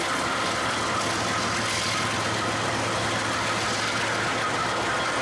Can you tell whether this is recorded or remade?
recorded